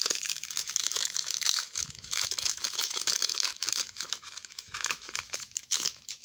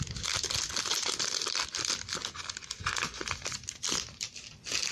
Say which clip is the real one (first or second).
second